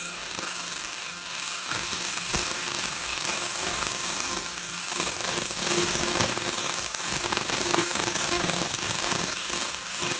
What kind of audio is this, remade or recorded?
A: remade